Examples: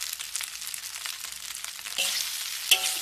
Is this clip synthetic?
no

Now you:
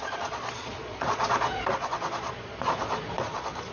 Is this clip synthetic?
yes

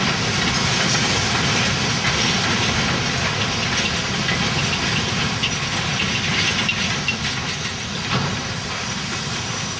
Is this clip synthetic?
no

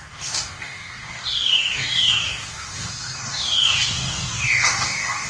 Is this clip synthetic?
yes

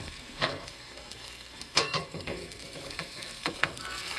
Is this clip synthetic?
yes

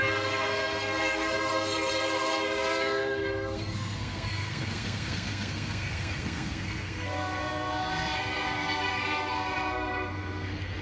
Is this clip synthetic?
yes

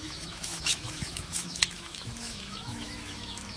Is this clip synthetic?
yes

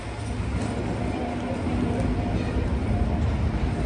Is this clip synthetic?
no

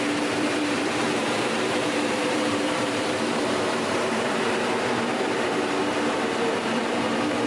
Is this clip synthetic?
yes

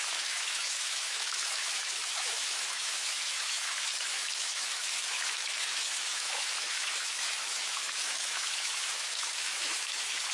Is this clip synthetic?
yes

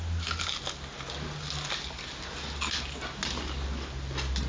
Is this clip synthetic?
no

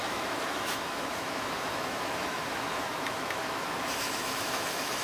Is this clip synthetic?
yes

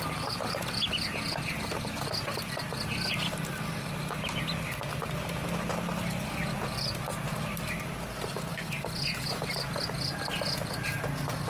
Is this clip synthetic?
no